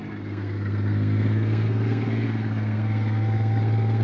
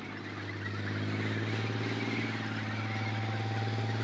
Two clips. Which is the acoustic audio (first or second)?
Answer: second